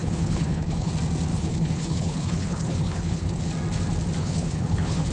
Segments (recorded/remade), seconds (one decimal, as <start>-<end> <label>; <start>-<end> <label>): 0.0-0.9 remade; 0.9-1.3 recorded; 1.3-3.4 remade; 3.4-4.2 recorded; 4.2-5.1 remade